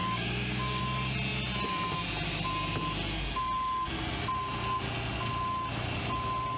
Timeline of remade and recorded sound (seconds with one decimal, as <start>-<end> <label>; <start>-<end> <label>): 0.0-0.8 remade; 0.8-6.6 recorded